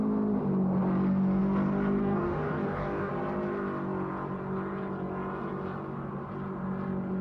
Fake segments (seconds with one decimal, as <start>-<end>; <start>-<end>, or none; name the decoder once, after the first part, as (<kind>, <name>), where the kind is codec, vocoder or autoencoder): 2.0-3.1 (codec, DAC)

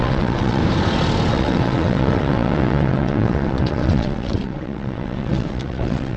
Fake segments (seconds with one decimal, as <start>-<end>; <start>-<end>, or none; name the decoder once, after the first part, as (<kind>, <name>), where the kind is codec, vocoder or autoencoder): 0.0-0.6 (vocoder, WaveNeXt); 1.3-6.2